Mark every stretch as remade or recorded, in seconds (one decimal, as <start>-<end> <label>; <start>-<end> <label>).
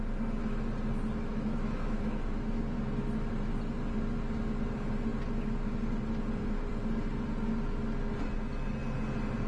0.0-1.3 recorded; 1.3-2.6 remade; 2.6-9.5 recorded